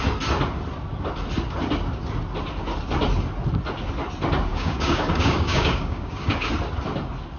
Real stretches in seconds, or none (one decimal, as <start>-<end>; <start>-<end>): 0.0-4.5; 6.5-7.4